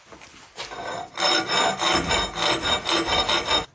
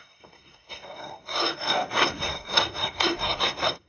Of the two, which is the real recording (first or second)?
first